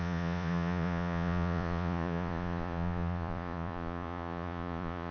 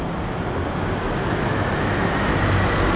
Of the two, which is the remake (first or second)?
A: first